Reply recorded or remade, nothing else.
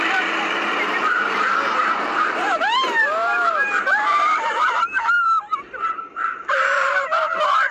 remade